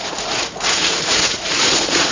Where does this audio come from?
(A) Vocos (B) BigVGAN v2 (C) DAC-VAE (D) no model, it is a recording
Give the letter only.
A